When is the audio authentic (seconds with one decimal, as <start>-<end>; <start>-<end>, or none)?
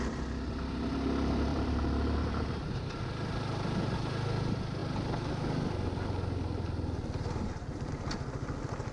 0.0-1.5; 2.8-8.9